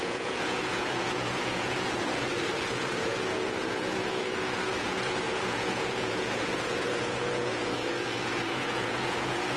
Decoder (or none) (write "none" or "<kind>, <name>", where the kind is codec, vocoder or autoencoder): vocoder, Vocos